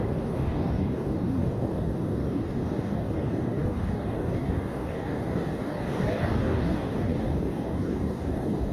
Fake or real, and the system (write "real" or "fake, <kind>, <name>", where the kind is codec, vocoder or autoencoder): fake, codec, DAC